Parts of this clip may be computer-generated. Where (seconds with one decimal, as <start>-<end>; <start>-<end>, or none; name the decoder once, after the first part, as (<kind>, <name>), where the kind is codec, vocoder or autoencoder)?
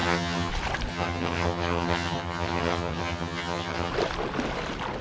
0.0-0.5 (vocoder, HiFi-GAN); 0.9-3.9